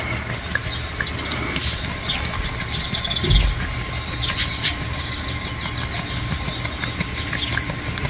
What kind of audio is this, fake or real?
real